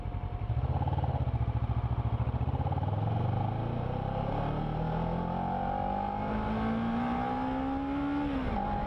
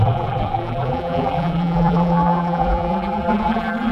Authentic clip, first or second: first